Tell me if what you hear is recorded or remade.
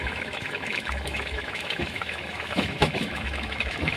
remade